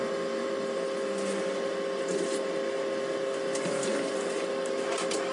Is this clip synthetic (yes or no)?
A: no